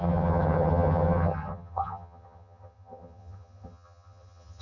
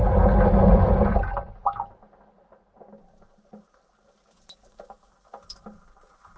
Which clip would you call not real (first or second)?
first